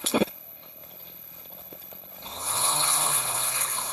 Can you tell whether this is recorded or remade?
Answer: remade